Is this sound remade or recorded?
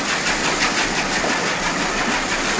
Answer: recorded